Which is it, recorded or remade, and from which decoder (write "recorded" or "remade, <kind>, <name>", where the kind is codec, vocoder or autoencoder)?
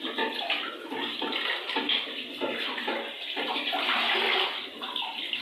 recorded